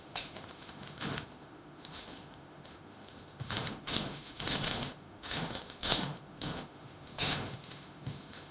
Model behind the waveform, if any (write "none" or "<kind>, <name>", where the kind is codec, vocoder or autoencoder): autoencoder, DAC-VAE